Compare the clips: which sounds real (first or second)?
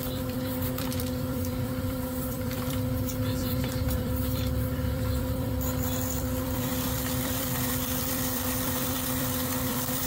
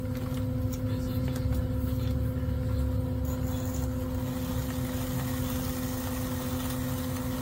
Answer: second